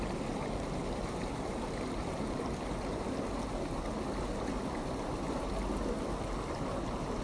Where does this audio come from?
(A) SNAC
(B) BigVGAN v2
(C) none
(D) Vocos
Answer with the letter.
C